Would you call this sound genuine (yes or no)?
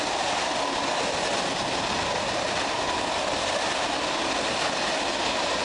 yes